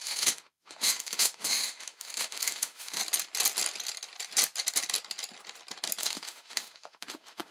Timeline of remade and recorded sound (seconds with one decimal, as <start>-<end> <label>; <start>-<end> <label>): 0.0-3.0 remade; 3.0-6.0 recorded; 6.0-7.5 remade